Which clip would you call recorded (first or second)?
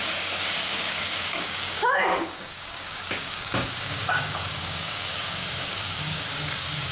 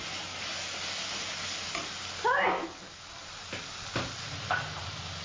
second